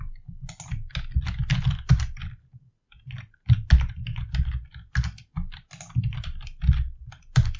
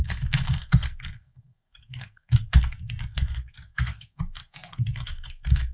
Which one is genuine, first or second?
first